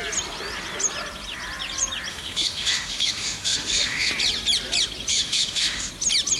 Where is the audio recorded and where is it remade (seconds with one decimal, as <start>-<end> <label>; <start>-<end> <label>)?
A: 0.0-2.1 recorded; 2.1-4.1 remade; 4.1-5.1 recorded; 5.1-5.9 remade; 5.9-6.4 recorded